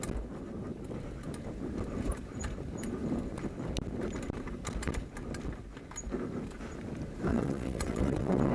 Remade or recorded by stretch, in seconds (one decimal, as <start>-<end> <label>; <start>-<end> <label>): 0.0-7.3 recorded; 7.3-8.5 remade